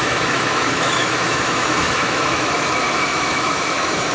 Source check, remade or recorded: remade